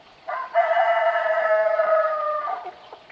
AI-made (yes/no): yes